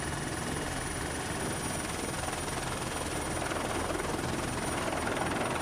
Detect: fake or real real